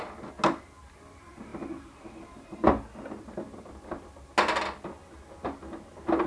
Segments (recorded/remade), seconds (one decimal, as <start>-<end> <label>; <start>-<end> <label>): 0.0-6.3 recorded